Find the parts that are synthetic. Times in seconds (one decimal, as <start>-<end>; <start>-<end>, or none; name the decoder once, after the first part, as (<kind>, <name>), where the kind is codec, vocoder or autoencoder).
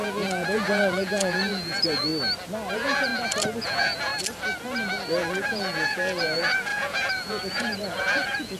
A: 0.0-2.1 (vocoder, Vocos); 2.7-3.1; 3.6-4.1; 5.1-8.6